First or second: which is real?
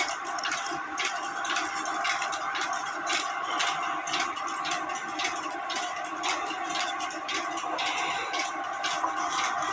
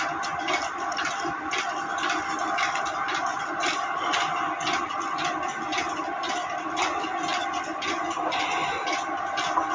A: second